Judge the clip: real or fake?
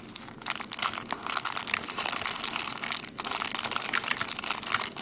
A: real